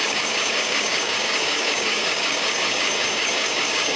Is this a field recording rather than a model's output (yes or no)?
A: no